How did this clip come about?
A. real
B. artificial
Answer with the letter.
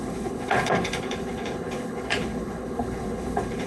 B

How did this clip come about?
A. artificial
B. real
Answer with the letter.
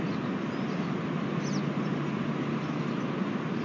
B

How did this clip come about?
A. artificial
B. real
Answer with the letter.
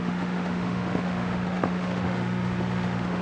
A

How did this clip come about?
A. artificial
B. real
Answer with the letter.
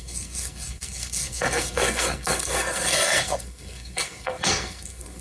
A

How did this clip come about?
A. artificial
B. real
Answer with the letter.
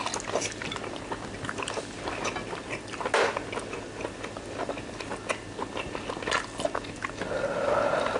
B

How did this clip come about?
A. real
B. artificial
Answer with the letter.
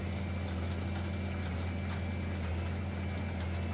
A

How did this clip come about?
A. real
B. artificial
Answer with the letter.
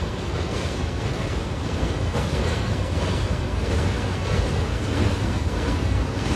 B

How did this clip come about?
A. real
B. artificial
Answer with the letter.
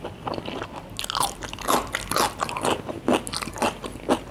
A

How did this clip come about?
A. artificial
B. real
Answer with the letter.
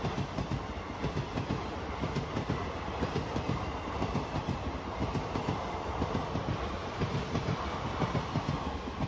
B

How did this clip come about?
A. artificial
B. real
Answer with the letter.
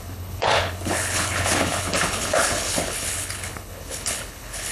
A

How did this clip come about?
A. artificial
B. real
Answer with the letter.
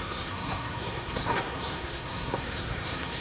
A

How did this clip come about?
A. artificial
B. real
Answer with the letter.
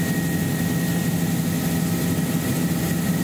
B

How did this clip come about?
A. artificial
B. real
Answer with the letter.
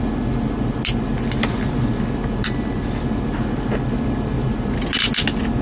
B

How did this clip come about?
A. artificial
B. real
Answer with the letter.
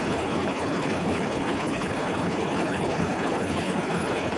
A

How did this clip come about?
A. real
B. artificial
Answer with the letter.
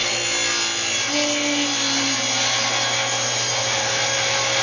A